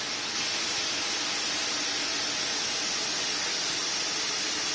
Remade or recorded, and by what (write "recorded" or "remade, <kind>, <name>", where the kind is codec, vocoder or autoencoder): recorded